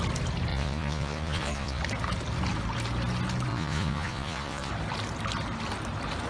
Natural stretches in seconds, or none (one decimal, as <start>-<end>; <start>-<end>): 0.0-0.5; 1.8-3.5; 4.7-6.3